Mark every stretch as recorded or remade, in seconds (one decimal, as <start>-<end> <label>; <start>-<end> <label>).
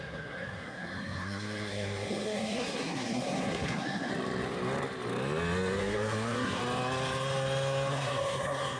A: 0.0-4.1 remade; 4.1-5.8 recorded; 5.8-6.6 remade; 6.6-7.9 recorded; 7.9-8.8 remade